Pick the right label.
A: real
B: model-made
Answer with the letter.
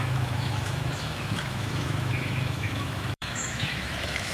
B